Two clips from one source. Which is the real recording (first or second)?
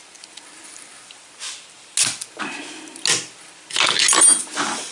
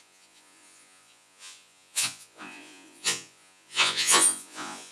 first